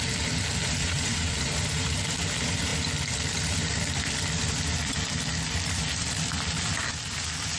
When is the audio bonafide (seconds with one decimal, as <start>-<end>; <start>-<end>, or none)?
0.0-0.8; 1.3-7.6